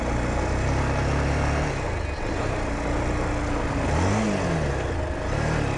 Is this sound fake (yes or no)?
no